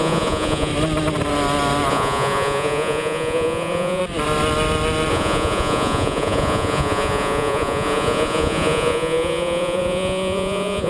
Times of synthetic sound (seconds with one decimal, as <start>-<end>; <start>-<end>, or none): 0.0-0.7; 1.9-4.0; 5.1-10.9